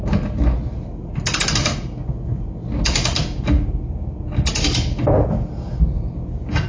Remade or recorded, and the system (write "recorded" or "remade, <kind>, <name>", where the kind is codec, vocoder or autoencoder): recorded